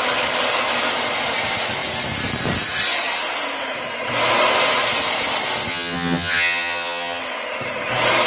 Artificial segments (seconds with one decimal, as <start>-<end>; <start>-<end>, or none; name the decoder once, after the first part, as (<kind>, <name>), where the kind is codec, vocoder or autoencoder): 5.7-7.2 (vocoder, HiFi-GAN)